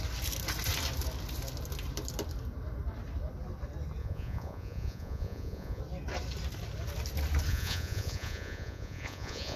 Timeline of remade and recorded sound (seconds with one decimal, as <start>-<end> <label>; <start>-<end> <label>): 0.0-4.0 recorded; 4.0-5.8 remade; 5.8-7.5 recorded; 7.5-9.6 remade